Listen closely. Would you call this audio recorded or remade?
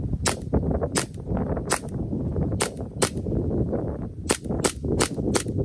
recorded